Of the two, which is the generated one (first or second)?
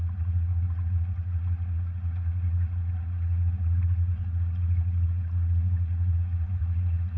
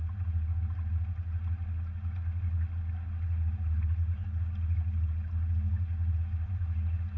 first